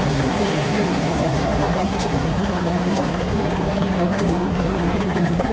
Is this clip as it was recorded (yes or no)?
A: no